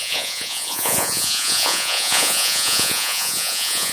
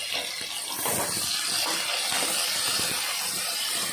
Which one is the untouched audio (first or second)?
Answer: second